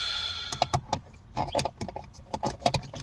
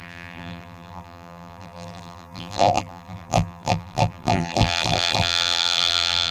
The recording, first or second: first